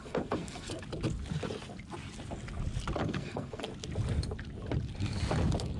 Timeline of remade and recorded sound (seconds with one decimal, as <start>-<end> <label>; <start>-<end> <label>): 0.0-0.8 remade; 0.8-3.0 recorded; 3.0-3.6 remade; 3.6-5.8 recorded